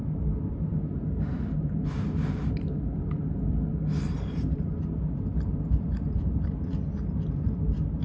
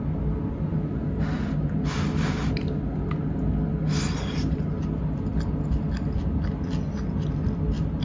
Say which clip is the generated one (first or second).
first